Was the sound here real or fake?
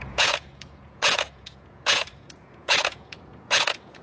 fake